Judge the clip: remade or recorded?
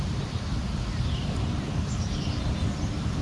recorded